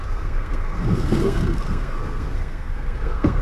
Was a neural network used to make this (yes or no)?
yes